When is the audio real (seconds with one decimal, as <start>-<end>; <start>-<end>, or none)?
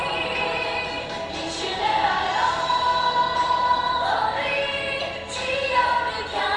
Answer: 0.0-6.6